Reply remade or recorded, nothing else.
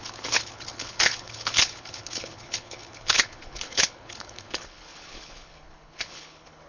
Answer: remade